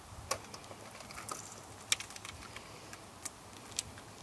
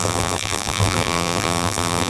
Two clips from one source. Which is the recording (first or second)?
first